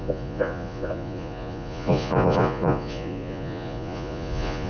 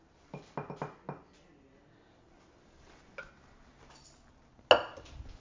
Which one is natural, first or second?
second